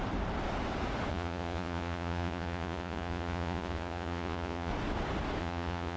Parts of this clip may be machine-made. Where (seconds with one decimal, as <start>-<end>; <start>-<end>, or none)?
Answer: 1.1-4.7; 5.4-6.0